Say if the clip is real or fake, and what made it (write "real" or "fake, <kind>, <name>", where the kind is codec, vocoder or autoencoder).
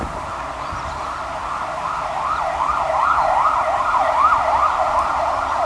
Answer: real